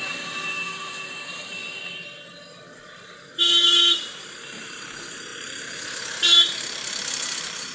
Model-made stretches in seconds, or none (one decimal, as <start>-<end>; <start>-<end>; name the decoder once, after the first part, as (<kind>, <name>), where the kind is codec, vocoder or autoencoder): 0.0-1.6 (vocoder, BigVGAN v2); 2.8-7.7